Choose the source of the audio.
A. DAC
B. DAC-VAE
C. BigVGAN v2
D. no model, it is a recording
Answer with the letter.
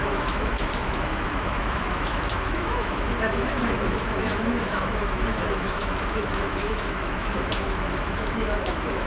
B